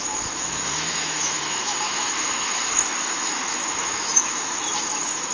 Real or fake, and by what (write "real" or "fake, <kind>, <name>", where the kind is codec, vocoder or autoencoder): fake, autoencoder, DAC-VAE